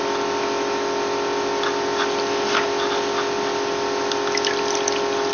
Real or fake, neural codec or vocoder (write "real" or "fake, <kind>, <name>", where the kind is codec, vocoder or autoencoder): real